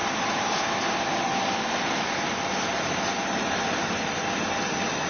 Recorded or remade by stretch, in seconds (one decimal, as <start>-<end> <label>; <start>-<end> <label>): 0.0-3.1 recorded; 3.1-5.1 remade